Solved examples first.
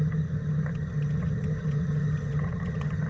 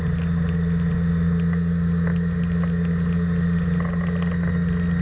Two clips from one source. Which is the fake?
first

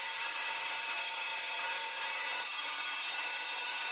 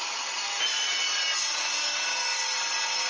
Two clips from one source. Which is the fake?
first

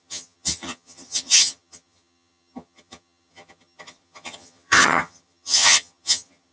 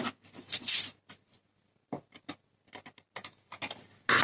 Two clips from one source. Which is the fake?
first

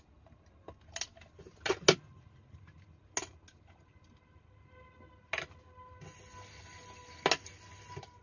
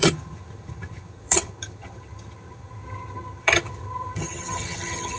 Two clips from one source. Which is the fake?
second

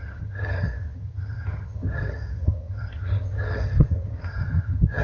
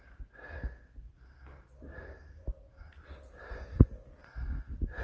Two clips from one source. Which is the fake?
first